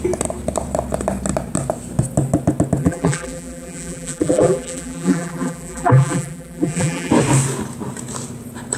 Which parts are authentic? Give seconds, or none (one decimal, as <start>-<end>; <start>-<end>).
0.0-2.8; 7.1-8.8